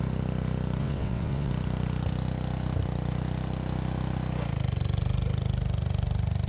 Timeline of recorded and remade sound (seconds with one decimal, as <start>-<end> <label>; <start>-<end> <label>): 0.0-0.8 recorded; 0.8-1.5 remade; 1.5-6.5 recorded